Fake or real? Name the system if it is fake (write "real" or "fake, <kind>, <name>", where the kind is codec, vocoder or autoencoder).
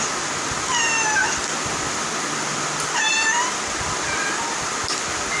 real